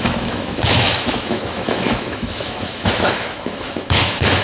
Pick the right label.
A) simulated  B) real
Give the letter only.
A